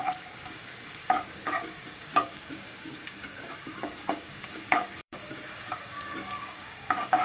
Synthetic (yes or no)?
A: yes